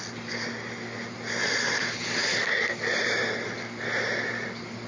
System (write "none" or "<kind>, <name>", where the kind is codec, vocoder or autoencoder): none